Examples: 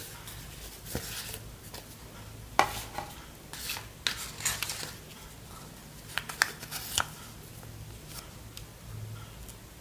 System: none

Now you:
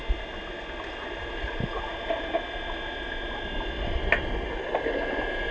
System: none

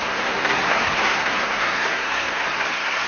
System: codec, SNAC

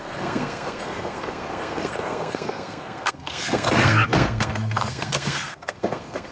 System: codec, SNAC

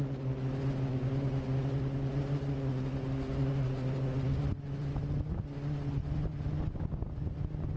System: none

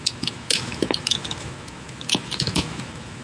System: autoencoder, DAC-VAE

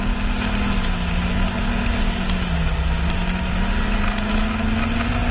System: none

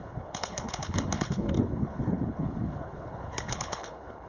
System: codec, HILCodec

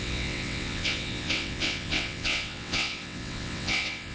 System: vocoder, WaveNeXt